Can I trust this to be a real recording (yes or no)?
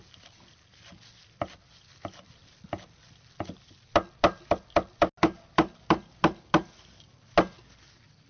yes